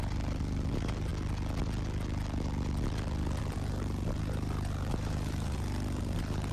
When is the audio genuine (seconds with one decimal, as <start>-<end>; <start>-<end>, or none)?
1.1-3.4